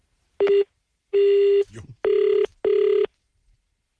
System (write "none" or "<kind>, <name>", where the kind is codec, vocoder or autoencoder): none